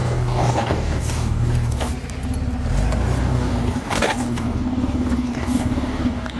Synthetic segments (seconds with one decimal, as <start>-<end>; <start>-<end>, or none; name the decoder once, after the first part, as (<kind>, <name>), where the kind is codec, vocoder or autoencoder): 0.0-1.9 (codec, DAC); 3.2-6.4

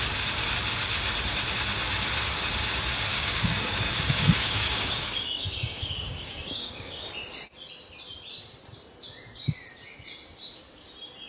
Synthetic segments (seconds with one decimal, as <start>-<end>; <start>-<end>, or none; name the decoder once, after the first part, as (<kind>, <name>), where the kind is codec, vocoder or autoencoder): 3.1-7.1 (codec, DAC)

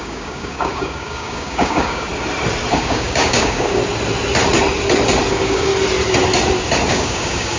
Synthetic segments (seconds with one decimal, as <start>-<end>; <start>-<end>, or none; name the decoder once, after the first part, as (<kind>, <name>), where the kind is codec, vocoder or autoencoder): 0.0-2.1 (codec, DAC); 2.7-3.8; 5.3-5.7; 6.9-7.6

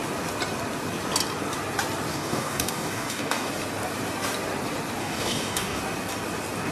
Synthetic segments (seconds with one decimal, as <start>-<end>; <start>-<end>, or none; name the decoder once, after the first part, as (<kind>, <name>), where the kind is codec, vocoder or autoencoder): 2.1-3.5 (codec, DAC); 5.0-5.8

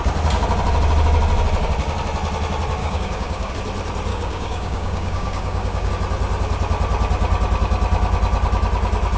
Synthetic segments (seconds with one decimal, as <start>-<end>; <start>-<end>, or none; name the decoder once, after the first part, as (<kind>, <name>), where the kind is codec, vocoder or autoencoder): 2.8-3.5 (codec, DAC); 4.1-5.9